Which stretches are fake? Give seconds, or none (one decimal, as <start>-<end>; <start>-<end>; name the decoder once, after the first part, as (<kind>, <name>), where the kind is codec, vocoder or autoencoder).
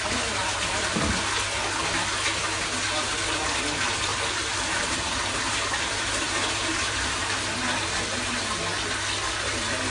0.4-1.0 (vocoder, BigVGAN v2); 4.1-7.9